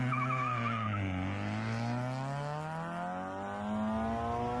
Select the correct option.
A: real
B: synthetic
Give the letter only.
A